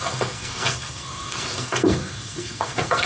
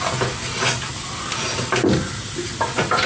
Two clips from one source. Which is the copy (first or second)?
first